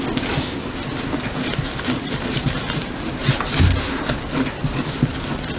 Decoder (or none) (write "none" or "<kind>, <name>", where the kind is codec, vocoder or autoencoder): none